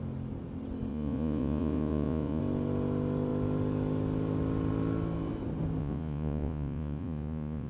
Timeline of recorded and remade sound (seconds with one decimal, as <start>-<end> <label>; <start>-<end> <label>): 0.0-0.9 recorded; 0.9-2.4 remade; 2.4-5.8 recorded; 5.8-7.7 remade

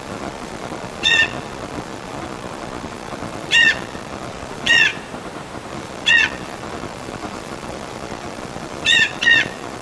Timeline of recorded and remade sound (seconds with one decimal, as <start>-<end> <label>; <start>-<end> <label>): 0.0-4.9 remade; 4.9-5.7 recorded; 5.7-9.8 remade

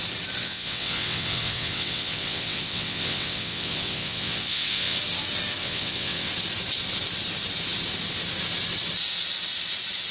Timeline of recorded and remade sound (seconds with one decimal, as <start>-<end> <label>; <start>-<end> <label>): 0.0-0.4 recorded; 0.4-5.0 remade; 5.0-5.6 recorded; 5.6-6.3 remade; 6.3-10.1 recorded

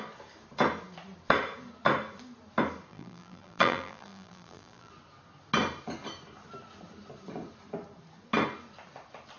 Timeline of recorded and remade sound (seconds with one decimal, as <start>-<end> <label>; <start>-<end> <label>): 0.0-2.9 recorded; 2.9-4.9 remade; 4.9-9.4 recorded

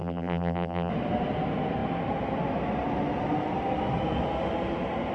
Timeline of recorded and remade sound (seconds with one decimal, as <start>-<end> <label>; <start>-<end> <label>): 0.0-0.9 remade; 0.9-5.1 recorded